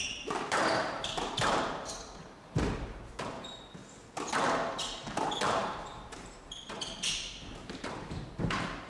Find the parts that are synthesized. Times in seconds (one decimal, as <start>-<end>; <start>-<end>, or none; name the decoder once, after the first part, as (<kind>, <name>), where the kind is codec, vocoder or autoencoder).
0.0-3.8 (vocoder, BigVGAN v2); 5.5-8.9